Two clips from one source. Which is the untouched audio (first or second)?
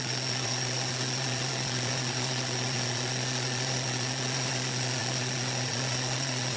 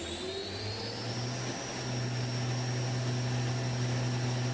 second